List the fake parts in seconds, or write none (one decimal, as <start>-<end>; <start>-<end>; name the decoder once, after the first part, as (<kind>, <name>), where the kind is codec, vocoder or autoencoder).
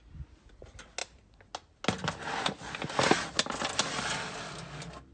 none